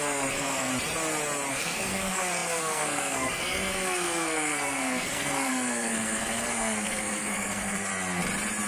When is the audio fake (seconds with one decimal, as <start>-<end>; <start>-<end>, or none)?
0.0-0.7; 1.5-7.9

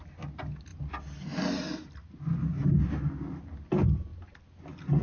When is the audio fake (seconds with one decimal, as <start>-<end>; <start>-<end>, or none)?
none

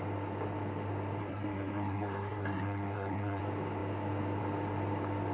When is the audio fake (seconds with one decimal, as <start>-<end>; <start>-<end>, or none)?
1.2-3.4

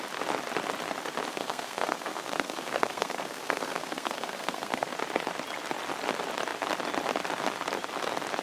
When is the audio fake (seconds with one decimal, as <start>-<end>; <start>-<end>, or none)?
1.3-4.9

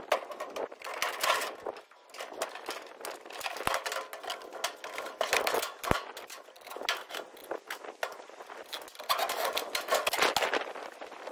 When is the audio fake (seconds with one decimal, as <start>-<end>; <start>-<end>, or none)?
none

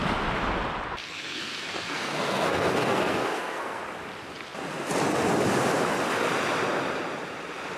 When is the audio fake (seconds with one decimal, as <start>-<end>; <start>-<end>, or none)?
1.0-3.8